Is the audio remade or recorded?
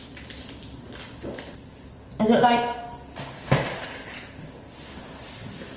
recorded